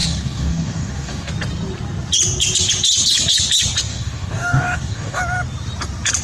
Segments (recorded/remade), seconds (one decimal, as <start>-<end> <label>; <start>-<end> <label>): 0.0-1.3 remade; 1.3-3.9 recorded; 3.9-5.2 remade; 5.2-6.2 recorded